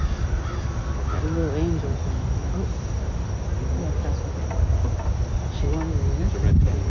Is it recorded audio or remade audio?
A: recorded